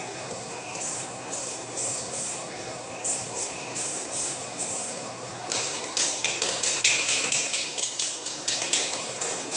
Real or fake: fake